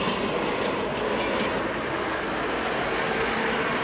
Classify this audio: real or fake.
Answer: real